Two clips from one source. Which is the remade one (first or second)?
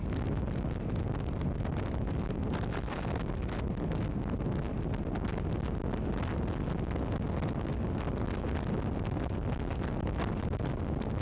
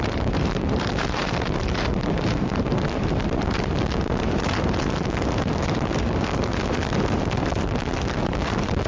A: second